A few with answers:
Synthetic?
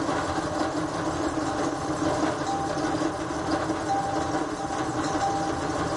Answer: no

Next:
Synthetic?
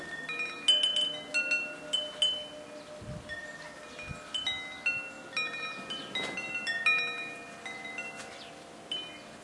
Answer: no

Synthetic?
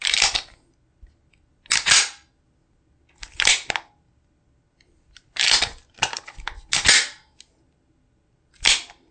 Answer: no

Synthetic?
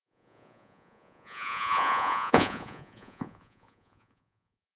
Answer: yes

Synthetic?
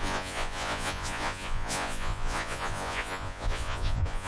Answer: yes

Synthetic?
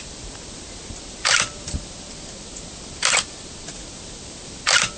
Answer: no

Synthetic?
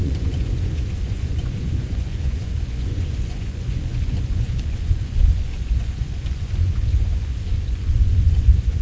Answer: yes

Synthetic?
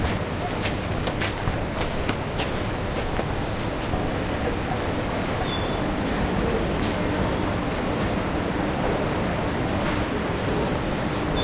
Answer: no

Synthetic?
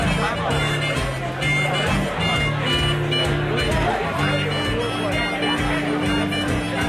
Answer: no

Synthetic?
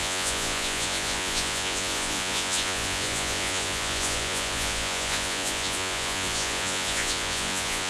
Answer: yes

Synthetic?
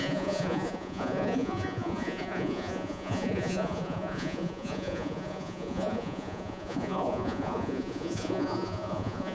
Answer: yes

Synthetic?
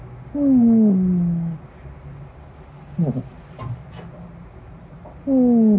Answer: no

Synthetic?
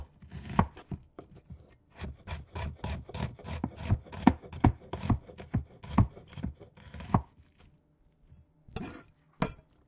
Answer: no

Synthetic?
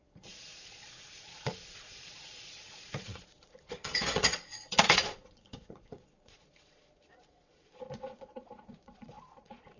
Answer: yes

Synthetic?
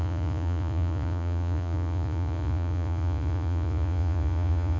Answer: yes